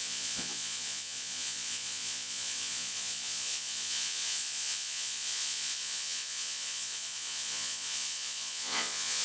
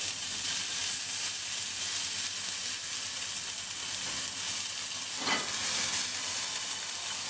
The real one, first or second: second